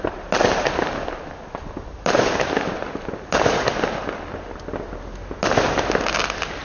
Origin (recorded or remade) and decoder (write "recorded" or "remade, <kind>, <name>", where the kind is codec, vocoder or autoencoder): recorded